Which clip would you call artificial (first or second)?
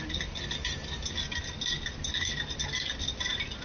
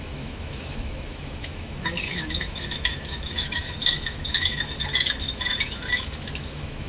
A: second